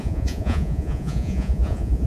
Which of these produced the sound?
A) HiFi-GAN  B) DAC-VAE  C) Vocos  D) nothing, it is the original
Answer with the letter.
C